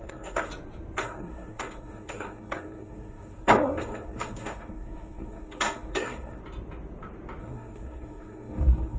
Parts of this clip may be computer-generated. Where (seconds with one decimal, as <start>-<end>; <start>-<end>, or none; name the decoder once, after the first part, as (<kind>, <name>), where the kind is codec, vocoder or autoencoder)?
0.0-0.5 (codec, SNAC); 1.0-6.4; 7.4-9.0